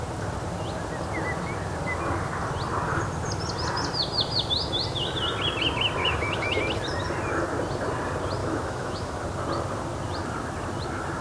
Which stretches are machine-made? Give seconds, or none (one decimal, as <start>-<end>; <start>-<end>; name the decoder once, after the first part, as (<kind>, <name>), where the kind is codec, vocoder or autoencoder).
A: 6.0-6.6 (autoencoder, DAC-VAE); 8.4-9.2